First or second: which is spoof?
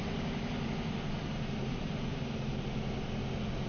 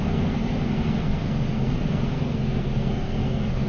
second